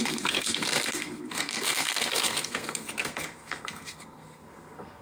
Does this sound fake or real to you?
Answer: fake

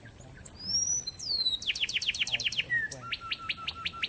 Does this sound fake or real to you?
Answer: real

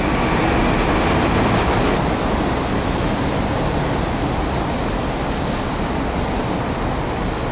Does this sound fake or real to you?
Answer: real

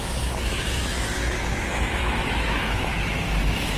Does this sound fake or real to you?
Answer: fake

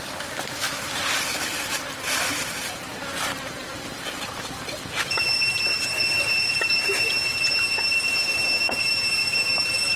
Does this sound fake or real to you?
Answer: fake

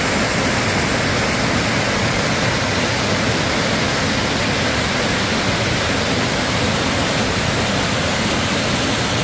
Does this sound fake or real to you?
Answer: real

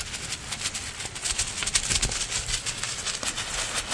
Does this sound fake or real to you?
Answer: real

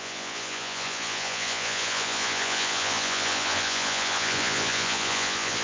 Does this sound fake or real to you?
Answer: fake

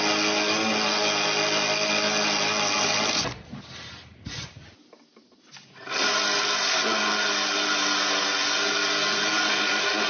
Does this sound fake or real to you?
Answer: real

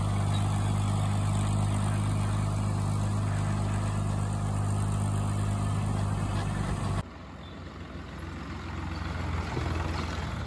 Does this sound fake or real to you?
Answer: real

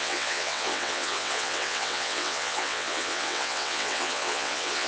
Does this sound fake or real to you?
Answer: fake